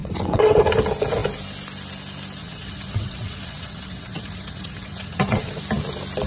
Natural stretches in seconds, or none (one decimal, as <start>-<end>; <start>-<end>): 0.6-2.4; 5.6-6.3